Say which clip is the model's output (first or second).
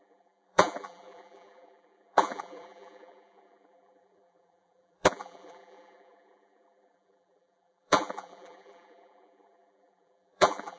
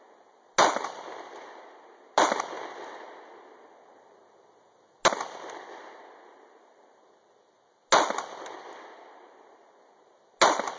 first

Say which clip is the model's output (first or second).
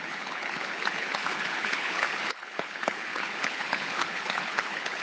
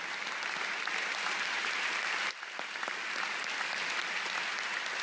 first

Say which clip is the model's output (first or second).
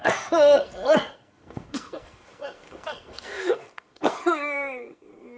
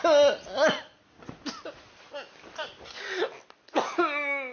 first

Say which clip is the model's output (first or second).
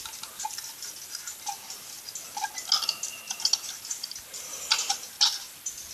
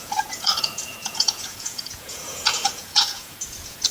second